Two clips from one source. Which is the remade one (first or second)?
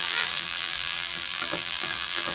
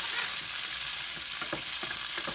first